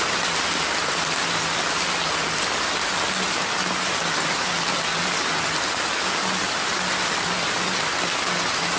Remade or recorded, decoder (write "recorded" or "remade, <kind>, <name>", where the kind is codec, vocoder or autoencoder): recorded